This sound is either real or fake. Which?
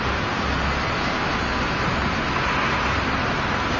real